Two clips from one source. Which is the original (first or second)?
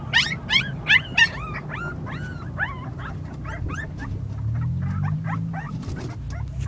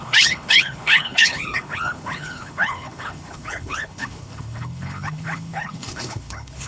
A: first